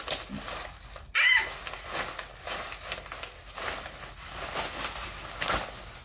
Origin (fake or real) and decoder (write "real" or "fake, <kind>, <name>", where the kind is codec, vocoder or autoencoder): real